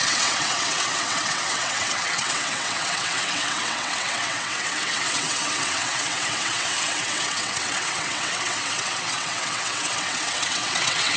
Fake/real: fake